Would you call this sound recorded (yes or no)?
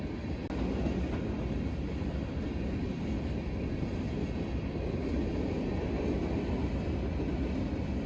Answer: yes